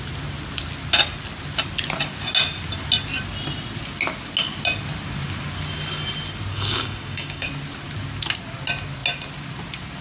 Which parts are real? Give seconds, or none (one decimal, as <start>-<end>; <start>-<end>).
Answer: 0.0-6.5; 7.5-10.0